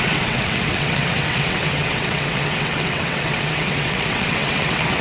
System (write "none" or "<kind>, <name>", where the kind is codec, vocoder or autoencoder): vocoder, WaveNeXt